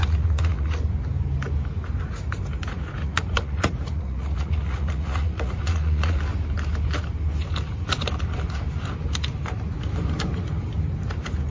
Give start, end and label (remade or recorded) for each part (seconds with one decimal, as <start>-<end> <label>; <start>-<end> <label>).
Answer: 0.0-0.8 remade; 0.8-3.0 recorded; 3.0-6.2 remade; 6.2-11.5 recorded